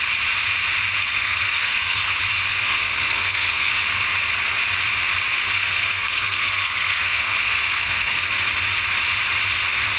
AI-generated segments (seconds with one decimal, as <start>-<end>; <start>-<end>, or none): 1.0-2.2; 2.6-3.7; 5.4-8.3